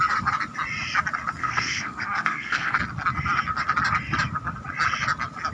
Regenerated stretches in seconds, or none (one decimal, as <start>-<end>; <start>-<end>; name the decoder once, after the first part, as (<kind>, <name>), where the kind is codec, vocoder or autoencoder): 1.4-2.8 (codec, SNAC)

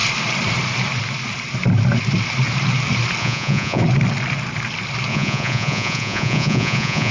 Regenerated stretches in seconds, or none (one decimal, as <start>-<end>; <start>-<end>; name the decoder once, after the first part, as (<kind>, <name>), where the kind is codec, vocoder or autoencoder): 3.2-3.8 (vocoder, Vocos); 5.1-7.1

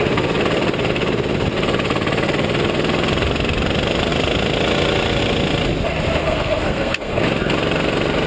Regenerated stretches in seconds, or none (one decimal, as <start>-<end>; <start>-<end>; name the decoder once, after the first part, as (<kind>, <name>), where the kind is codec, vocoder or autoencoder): 6.2-7.2 (codec, SNAC)